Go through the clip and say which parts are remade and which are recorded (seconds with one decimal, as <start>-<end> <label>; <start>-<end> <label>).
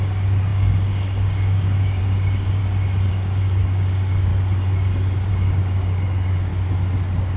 0.0-2.6 remade; 2.6-3.1 recorded; 3.1-4.3 remade; 4.3-5.3 recorded; 5.3-6.5 remade; 6.5-7.4 recorded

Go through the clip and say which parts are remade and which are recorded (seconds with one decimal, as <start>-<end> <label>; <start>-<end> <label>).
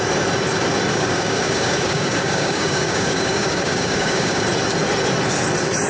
0.0-0.9 recorded; 0.9-4.4 remade; 4.4-5.9 recorded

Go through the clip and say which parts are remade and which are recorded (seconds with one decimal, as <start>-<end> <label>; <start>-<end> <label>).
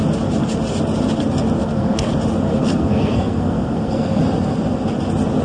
0.0-1.6 recorded; 1.6-2.1 remade; 2.1-2.5 recorded; 2.5-4.2 remade; 4.2-5.4 recorded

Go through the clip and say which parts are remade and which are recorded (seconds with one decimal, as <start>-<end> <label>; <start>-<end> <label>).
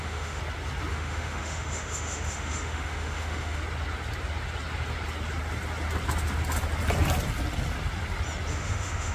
0.0-0.4 remade; 0.4-0.9 recorded; 0.9-3.6 remade; 3.6-8.5 recorded; 8.5-9.1 remade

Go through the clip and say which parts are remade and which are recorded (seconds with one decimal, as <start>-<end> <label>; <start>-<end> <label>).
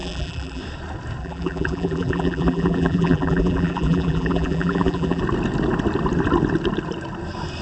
0.0-0.6 remade; 0.6-1.2 recorded; 1.2-5.2 remade; 5.2-7.6 recorded